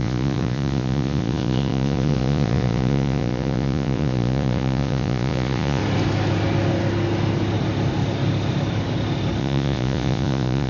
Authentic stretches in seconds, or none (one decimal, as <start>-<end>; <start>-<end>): 5.8-9.4